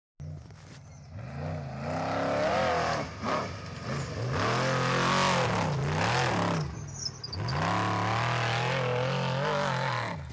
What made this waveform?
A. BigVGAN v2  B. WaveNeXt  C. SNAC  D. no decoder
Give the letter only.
D